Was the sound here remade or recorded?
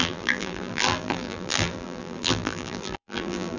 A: remade